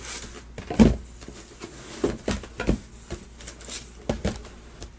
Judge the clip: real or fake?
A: real